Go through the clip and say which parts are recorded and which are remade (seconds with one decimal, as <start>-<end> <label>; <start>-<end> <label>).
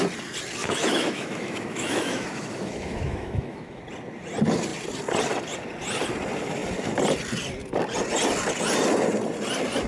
0.0-0.6 recorded; 0.6-3.8 remade; 3.8-9.9 recorded